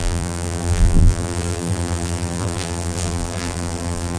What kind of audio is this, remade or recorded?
remade